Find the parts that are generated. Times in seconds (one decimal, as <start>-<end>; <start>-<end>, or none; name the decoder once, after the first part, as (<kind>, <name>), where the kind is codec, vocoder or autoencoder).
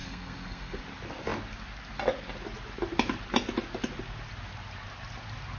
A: 0.0-0.8 (codec, SNAC)